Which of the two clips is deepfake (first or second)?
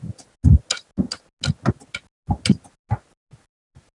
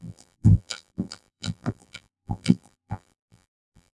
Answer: second